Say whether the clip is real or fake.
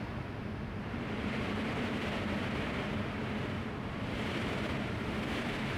fake